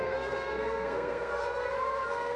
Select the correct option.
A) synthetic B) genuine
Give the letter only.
A